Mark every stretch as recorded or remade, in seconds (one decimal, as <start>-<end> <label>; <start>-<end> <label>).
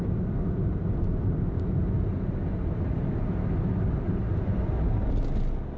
0.0-5.8 recorded